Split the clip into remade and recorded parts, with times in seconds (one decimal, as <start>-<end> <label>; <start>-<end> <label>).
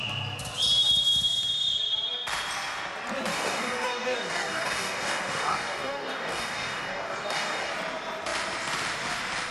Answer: 0.0-3.3 recorded; 3.3-7.7 remade; 7.7-9.5 recorded